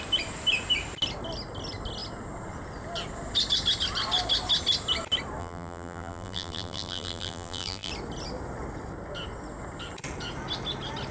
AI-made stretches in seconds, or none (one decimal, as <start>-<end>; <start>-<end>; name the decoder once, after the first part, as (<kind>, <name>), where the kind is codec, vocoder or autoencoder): 5.4-7.9 (vocoder, BigVGAN v2)